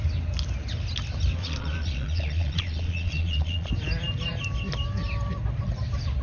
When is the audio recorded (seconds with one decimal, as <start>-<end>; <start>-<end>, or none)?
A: 0.0-1.4; 3.7-6.2